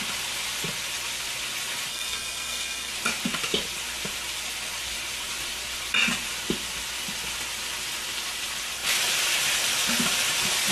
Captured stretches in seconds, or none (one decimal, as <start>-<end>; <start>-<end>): 0.0-1.9; 2.9-10.7